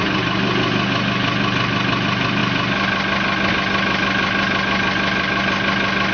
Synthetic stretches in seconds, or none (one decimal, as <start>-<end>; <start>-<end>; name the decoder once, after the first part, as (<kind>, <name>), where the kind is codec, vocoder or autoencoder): none